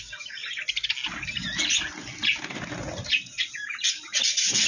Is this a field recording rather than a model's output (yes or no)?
yes